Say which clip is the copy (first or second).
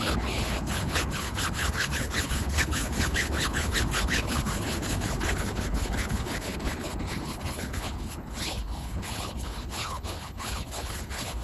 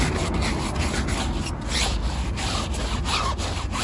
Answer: first